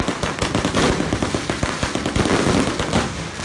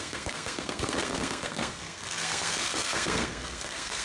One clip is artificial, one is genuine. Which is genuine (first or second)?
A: first